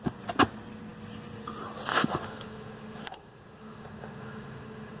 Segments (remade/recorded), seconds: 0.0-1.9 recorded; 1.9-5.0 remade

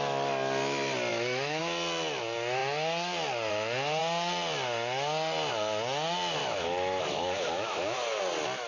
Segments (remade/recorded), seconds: 0.0-1.1 recorded; 1.1-1.6 remade; 1.6-6.4 recorded; 6.4-8.2 remade; 8.2-8.7 recorded

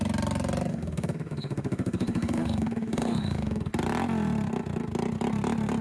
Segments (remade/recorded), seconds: 0.0-0.7 recorded; 0.7-3.7 remade; 3.7-5.8 recorded

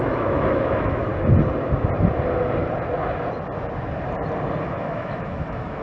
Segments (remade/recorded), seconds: 0.0-1.1 remade; 1.1-4.6 recorded; 4.6-5.8 remade

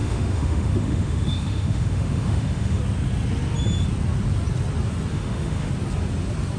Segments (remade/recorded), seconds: 0.0-2.8 remade; 2.8-5.1 recorded; 5.1-5.7 remade; 5.7-6.6 recorded

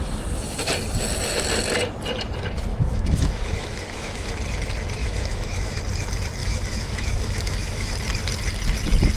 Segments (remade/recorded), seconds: 0.0-2.7 recorded; 2.7-4.3 remade; 4.3-5.0 recorded; 5.0-5.8 remade; 5.8-6.4 recorded; 6.4-7.9 remade; 7.9-9.2 recorded